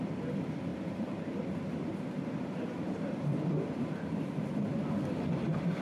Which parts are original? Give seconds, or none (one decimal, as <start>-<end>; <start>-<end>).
0.0-0.7; 1.5-1.9; 4.4-5.8